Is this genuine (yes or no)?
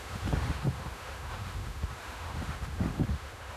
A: no